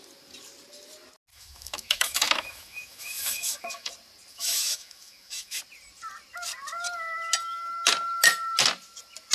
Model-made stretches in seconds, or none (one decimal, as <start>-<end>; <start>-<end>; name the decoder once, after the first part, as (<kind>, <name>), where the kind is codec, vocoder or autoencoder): 1.3-3.9 (autoencoder, DAC-VAE); 4.3-5.6